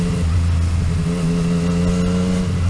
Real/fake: real